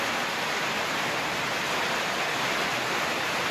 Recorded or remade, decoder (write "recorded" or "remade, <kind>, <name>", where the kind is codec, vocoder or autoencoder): recorded